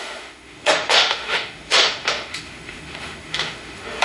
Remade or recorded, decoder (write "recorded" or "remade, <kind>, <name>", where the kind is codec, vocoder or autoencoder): remade, autoencoder, DAC-VAE